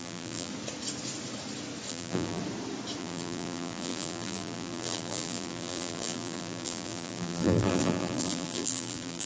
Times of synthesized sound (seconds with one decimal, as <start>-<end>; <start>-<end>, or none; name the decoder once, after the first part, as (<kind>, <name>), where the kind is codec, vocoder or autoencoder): 0.0-0.5 (vocoder, BigVGAN v2); 1.9-2.4; 3.0-9.3